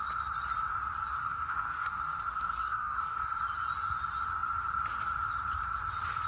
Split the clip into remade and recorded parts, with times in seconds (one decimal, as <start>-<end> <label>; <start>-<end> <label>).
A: 0.0-1.2 recorded; 1.2-3.4 remade; 3.4-6.3 recorded